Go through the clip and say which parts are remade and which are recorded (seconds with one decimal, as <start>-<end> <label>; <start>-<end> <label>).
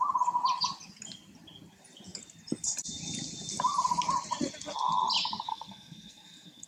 0.0-5.5 recorded; 5.5-6.7 remade